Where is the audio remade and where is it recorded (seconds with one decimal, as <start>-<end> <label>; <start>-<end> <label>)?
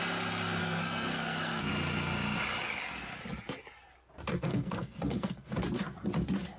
0.0-0.6 recorded; 0.6-1.7 remade; 1.7-4.3 recorded; 4.3-5.5 remade; 5.5-6.6 recorded